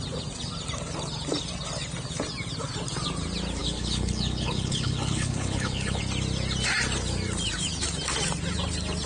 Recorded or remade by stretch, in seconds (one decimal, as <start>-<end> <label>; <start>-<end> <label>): 0.0-3.6 recorded; 3.6-6.0 remade; 6.0-9.1 recorded